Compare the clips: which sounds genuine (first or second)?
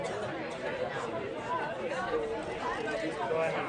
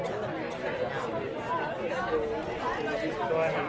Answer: second